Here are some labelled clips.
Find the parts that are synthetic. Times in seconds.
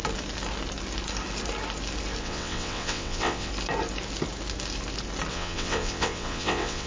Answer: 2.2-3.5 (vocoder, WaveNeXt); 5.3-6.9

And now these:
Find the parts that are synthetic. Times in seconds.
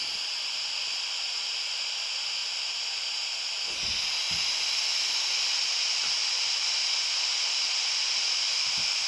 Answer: none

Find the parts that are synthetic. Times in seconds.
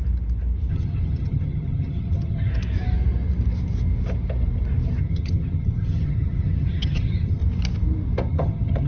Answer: 0.7-2.5 (vocoder, HiFi-GAN); 5.0-7.4; 8.3-8.9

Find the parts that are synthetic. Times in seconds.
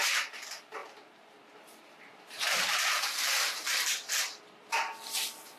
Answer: 0.0-3.7 (vocoder, BigVGAN v2)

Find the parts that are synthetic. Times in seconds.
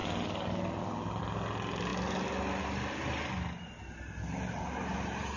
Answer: none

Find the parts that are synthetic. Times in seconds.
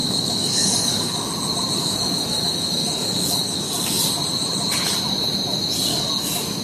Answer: 0.0-1.3 (codec, DAC); 1.8-4.0; 5.9-6.6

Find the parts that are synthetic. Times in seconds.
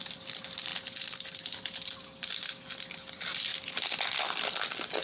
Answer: none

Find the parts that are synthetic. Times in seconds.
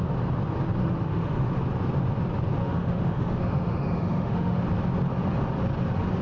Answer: 0.8-1.6 (autoencoder, DAC-VAE); 2.6-4.6